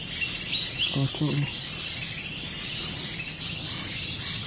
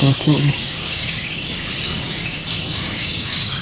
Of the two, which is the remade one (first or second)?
second